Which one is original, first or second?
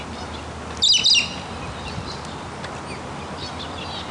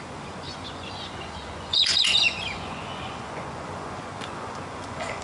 first